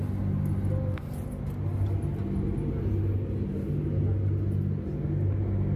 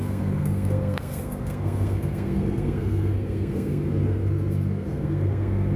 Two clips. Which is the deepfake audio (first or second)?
second